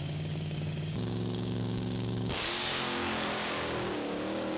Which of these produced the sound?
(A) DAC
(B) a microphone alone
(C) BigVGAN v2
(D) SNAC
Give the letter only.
A